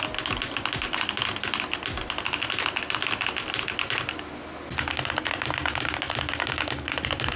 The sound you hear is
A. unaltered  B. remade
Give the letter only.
A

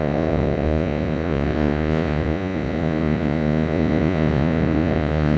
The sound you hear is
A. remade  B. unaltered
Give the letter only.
A